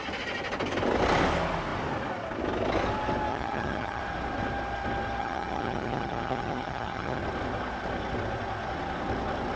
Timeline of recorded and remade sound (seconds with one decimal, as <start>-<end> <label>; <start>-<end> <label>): 0.0-3.3 recorded; 3.3-4.0 remade; 4.0-5.2 recorded; 5.2-7.2 remade; 7.2-9.6 recorded